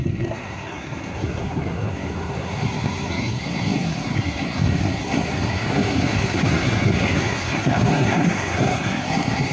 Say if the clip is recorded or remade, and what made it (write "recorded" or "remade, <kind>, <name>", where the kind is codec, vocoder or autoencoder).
remade, codec, SNAC